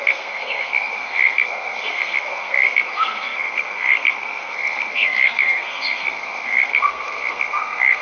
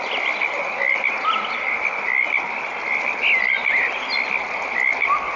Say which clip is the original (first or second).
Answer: second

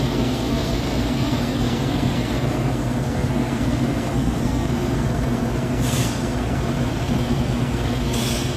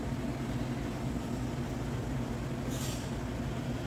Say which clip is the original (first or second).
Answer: second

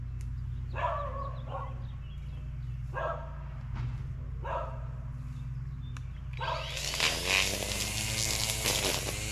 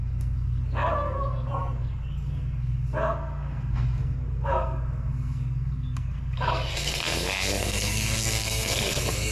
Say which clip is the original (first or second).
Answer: first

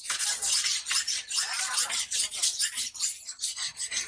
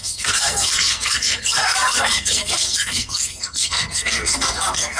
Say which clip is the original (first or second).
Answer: first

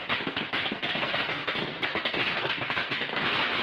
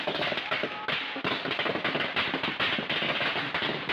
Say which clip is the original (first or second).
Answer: second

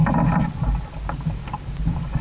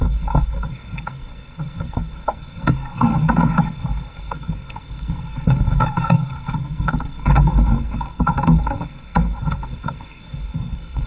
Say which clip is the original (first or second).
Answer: first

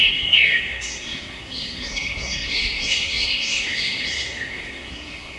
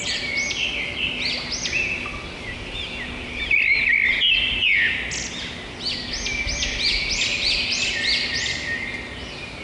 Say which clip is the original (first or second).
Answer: second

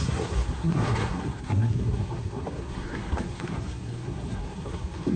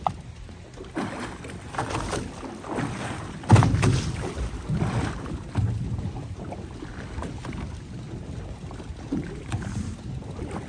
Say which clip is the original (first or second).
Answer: second